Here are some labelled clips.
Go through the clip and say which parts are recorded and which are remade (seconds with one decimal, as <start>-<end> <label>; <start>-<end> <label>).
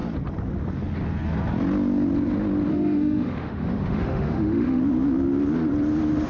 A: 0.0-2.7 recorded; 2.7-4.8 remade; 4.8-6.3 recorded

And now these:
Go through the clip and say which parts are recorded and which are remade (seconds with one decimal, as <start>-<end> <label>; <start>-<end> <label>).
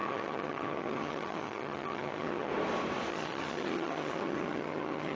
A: 0.0-2.5 remade; 2.5-3.1 recorded; 3.1-5.2 remade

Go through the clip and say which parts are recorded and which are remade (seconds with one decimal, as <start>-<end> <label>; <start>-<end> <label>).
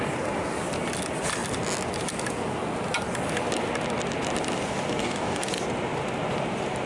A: 0.0-5.0 recorded; 5.0-5.5 remade; 5.5-6.9 recorded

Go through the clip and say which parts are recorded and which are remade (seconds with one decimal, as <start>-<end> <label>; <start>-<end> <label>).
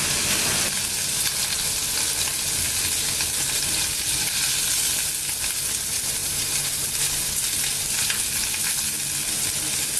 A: 0.0-6.2 recorded; 6.2-6.9 remade; 6.9-10.0 recorded